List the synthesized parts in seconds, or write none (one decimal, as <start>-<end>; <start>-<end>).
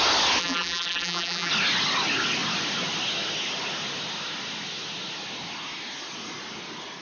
0.4-1.5